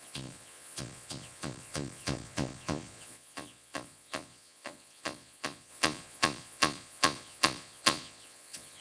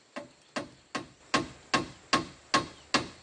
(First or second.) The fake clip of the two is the first